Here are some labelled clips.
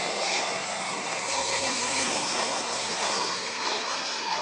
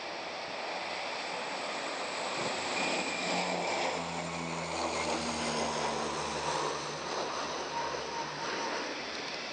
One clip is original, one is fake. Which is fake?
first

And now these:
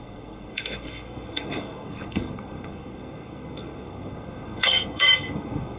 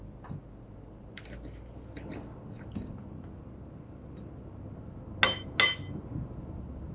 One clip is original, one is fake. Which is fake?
first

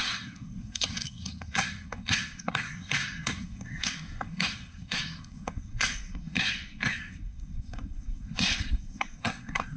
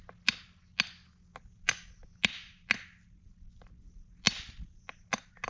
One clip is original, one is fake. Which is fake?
first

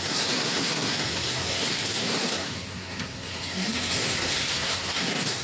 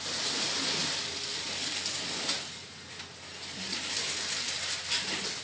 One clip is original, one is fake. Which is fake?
first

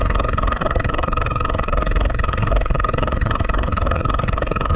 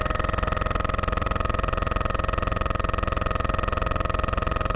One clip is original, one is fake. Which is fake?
first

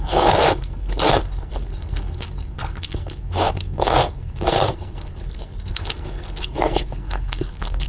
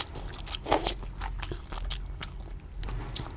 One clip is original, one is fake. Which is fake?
first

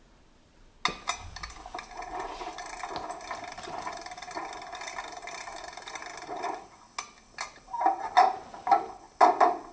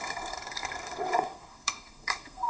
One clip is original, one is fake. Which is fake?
second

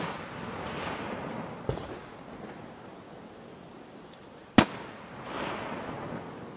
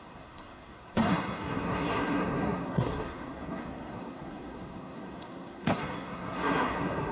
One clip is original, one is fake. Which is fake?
second